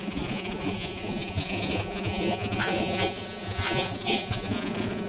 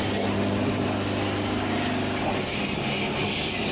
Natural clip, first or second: second